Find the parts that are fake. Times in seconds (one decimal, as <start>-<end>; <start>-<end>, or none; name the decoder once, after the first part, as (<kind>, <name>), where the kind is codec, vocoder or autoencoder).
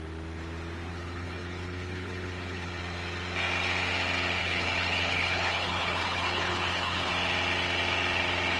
0.9-2.8 (codec, HILCodec); 4.4-7.1